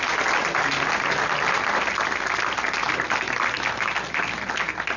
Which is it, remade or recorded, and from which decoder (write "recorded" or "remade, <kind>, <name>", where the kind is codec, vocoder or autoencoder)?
recorded